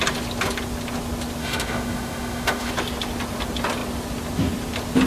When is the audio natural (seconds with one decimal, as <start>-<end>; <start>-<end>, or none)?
0.0-1.4; 2.7-5.1